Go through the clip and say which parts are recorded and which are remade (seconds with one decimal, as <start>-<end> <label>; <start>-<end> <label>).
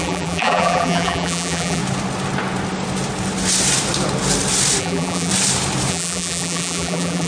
0.0-1.8 remade; 1.8-4.8 recorded; 4.8-5.3 remade; 5.3-5.9 recorded; 5.9-7.3 remade